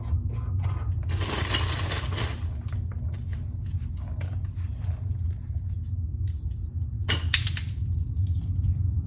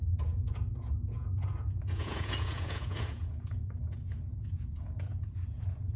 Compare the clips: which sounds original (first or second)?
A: first